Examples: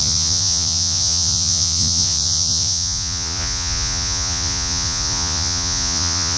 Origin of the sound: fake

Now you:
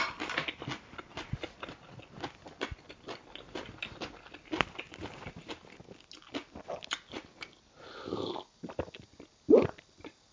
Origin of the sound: real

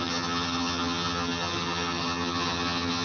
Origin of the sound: fake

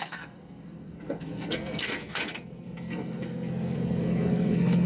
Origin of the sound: fake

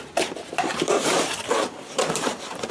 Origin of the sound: fake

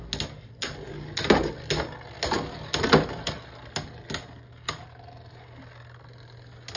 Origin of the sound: real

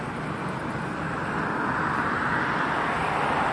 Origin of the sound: real